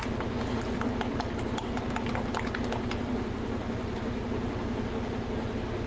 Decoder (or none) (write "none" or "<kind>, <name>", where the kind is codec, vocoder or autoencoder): none